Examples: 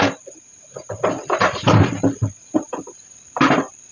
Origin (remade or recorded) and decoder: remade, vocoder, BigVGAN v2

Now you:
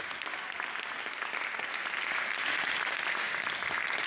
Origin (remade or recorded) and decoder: recorded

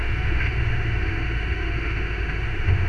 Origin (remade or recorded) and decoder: remade, autoencoder, DAC-VAE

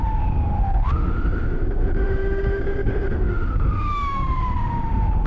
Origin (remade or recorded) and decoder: remade, autoencoder, DAC-VAE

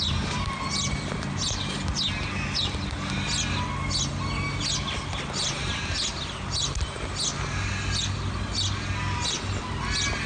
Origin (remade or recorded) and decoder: recorded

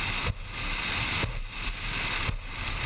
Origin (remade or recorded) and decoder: recorded